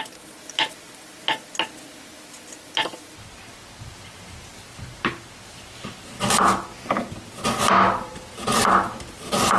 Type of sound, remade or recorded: recorded